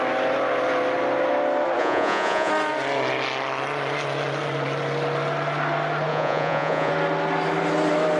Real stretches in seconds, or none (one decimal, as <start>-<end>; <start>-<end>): 0.0-1.8; 2.5-6.1; 6.9-8.2